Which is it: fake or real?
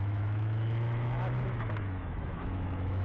fake